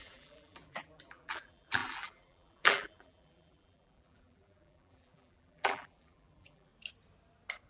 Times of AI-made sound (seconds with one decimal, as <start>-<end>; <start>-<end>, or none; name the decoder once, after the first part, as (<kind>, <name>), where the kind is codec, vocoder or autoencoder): 0.0-6.7 (vocoder, BigVGAN v2)

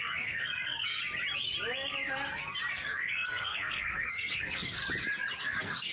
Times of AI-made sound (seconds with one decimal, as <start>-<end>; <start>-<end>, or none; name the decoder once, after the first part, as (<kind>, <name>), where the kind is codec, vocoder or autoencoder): 0.0-1.0 (codec, SNAC); 2.7-4.8; 5.4-5.9

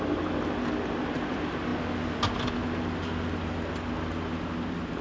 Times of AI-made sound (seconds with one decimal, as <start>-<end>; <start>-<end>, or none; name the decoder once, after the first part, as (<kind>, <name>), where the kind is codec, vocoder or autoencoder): none

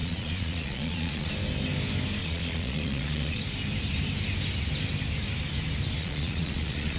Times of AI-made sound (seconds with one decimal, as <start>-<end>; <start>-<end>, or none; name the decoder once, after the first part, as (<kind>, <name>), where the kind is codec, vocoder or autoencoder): 0.0-1.3 (vocoder, Vocos); 2.2-3.4; 6.0-7.0

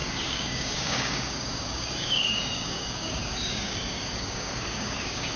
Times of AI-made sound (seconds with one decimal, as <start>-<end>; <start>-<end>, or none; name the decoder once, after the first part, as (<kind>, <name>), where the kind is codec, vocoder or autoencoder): 0.0-5.4 (codec, DAC)

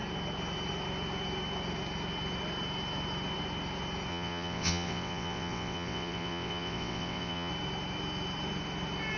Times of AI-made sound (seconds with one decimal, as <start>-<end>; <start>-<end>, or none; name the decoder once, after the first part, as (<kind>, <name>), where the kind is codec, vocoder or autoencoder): 4.1-7.5 (vocoder, WaveNeXt)

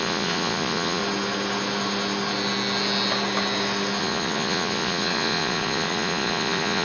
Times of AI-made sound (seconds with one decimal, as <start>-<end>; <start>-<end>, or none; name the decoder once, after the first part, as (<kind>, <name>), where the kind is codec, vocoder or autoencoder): 0.0-1.0 (vocoder, Vocos); 4.0-6.8

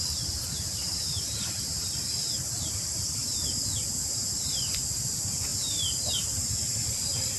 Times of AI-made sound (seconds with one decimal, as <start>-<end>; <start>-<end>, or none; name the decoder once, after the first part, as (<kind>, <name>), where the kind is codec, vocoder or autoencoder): 0.0-7.4 (vocoder, BigVGAN v2)